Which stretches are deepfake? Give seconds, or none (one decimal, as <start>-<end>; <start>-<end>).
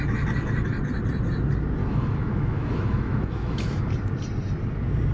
1.8-3.8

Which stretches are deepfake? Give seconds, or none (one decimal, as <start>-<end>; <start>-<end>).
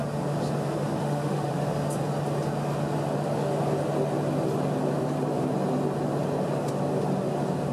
1.0-1.5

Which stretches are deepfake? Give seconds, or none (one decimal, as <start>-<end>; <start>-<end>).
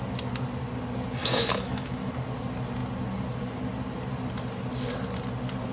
1.2-2.1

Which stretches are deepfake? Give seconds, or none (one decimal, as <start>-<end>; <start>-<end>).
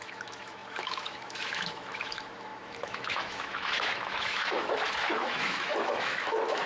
0.0-6.7